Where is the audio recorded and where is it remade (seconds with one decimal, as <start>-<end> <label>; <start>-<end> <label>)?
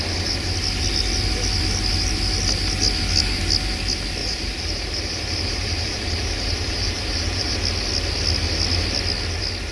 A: 0.0-4.2 recorded; 4.2-7.5 remade; 7.5-9.7 recorded